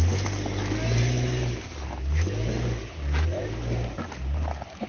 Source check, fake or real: real